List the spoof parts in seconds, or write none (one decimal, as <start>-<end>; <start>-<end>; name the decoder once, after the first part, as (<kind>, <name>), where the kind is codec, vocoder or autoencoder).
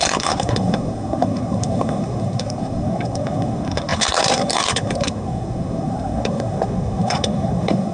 0.0-7.9 (codec, SNAC)